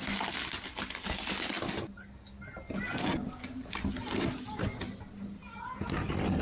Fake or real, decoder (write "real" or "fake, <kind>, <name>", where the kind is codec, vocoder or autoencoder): real